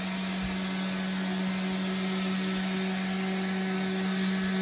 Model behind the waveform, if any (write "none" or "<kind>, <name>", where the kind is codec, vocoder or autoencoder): none